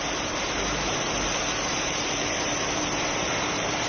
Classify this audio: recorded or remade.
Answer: remade